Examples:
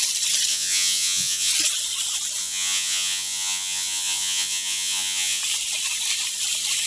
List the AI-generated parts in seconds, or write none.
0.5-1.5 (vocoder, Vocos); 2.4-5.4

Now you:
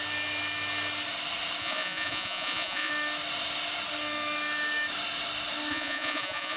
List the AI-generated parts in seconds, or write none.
1.6-2.9 (vocoder, Vocos); 5.7-6.6

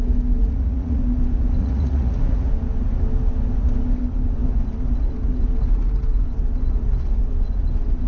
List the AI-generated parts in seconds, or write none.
0.4-1.0 (vocoder, Vocos); 1.6-2.5